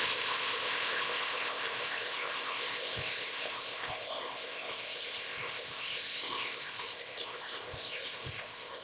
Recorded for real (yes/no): no